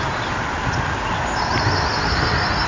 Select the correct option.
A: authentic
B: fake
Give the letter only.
A